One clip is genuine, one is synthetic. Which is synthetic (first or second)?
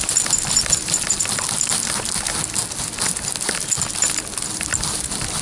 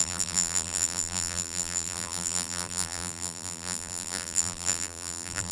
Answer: second